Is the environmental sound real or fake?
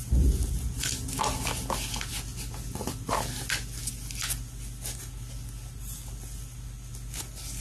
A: real